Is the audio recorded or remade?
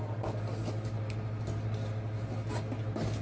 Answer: recorded